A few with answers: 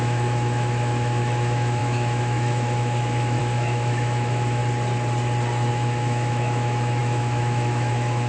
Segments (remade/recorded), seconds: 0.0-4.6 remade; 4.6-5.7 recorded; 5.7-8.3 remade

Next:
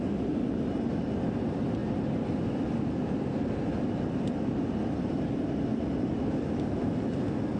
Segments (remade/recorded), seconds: 0.0-7.6 recorded